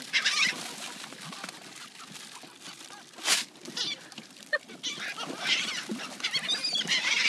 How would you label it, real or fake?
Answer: real